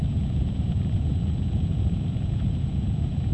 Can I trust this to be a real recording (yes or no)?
no